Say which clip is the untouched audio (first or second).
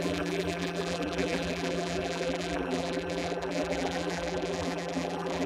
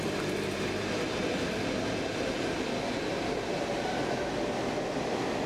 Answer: second